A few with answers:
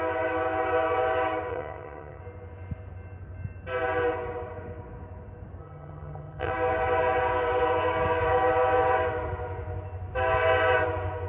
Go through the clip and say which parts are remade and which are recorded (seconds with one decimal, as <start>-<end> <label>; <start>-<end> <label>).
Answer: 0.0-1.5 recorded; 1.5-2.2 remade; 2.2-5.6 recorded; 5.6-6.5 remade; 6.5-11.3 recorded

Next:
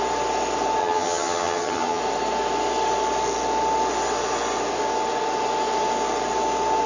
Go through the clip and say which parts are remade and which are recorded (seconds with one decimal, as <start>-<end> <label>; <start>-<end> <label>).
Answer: 0.0-0.8 recorded; 0.8-2.0 remade; 2.0-6.9 recorded

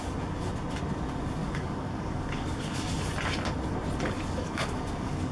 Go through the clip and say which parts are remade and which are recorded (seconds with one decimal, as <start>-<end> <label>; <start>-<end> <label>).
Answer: 0.0-1.4 recorded; 1.4-2.9 remade; 2.9-4.4 recorded; 4.4-5.3 remade

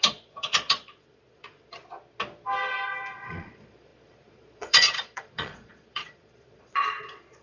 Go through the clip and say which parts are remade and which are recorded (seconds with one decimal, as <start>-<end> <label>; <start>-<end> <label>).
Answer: 0.0-1.8 remade; 1.8-3.1 recorded; 3.1-7.4 remade

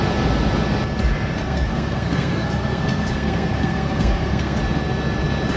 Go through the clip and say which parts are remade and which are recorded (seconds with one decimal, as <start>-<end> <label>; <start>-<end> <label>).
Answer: 0.0-1.4 recorded; 1.4-4.6 remade; 4.6-5.6 recorded

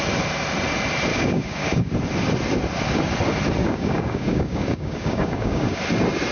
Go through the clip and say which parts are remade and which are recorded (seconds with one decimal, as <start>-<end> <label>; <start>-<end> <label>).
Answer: 0.0-1.1 recorded; 1.1-1.9 remade; 1.9-3.6 recorded; 3.6-5.8 remade; 5.8-6.3 recorded

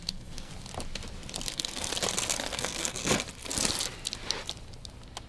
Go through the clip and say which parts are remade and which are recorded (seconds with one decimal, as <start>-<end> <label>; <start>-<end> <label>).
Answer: 0.0-0.5 remade; 0.5-1.5 recorded; 1.5-1.9 remade; 1.9-2.5 recorded; 2.5-3.0 remade; 3.0-5.3 recorded